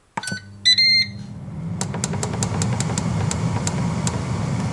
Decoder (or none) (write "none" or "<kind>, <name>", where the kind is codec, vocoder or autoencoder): none